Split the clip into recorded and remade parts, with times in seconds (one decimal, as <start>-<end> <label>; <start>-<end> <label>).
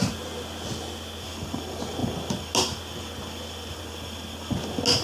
0.0-5.0 recorded